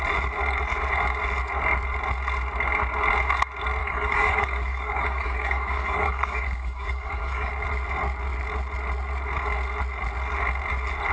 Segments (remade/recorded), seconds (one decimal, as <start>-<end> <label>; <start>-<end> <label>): 0.0-3.8 recorded; 3.8-7.5 remade; 7.5-11.1 recorded